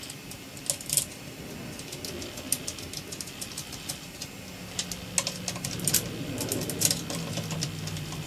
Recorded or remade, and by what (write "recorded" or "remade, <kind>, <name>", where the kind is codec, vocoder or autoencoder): recorded